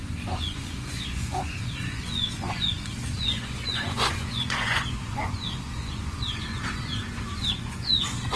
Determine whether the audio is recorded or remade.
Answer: remade